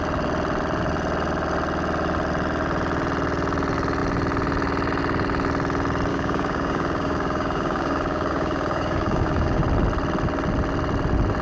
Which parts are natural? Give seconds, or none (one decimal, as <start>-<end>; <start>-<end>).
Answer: 0.0-6.1; 9.6-11.4